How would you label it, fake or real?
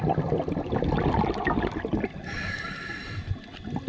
real